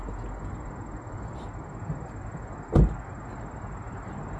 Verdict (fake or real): real